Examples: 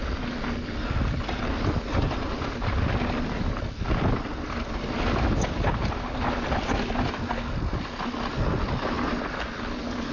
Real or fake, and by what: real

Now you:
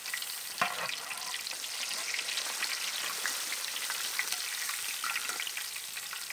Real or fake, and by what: real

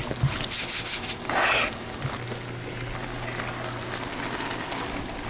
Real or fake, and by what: real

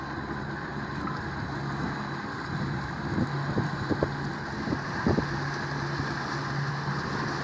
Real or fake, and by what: real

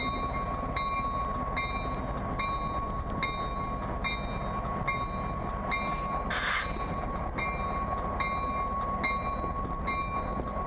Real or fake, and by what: real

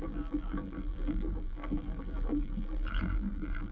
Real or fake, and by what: fake, vocoder, BigVGAN v2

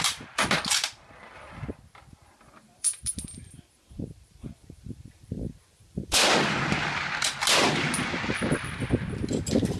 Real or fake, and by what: fake, vocoder, BigVGAN v2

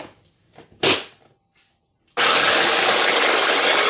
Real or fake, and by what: fake, vocoder, BigVGAN v2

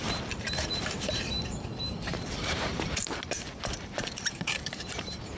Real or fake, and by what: fake, vocoder, BigVGAN v2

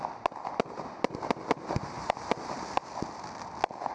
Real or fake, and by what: real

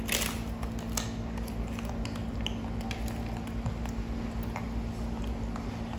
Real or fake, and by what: real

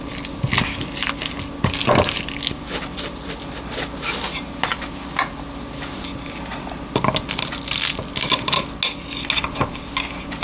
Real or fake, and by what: real